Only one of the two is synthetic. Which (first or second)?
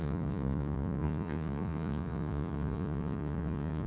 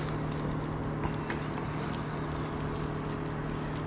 first